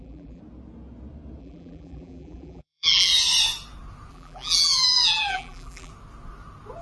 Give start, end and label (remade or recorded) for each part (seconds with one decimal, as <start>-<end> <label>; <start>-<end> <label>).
0.0-0.4 remade; 0.4-1.4 recorded; 1.4-3.1 remade; 3.1-4.1 recorded; 4.1-5.9 remade; 5.9-6.8 recorded